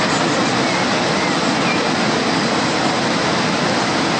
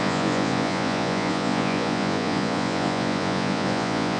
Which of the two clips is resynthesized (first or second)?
second